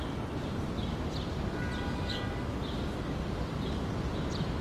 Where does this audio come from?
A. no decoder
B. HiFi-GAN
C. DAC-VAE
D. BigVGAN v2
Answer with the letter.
A